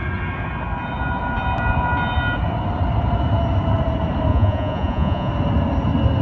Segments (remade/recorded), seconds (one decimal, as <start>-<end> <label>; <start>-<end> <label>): 0.0-4.3 recorded; 4.3-5.3 remade; 5.3-6.2 recorded